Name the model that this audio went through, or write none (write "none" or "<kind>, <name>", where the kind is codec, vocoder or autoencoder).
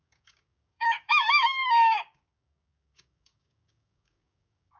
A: codec, DAC